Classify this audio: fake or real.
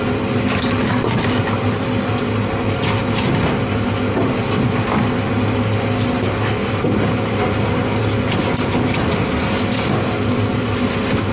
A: real